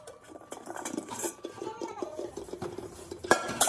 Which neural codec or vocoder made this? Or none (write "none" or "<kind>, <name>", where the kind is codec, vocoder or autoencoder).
vocoder, BigVGAN v2